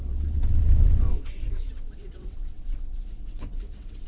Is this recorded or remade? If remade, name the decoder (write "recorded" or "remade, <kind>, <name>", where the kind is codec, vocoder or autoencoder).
remade, vocoder, WaveNeXt